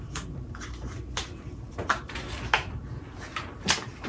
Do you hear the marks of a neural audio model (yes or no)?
no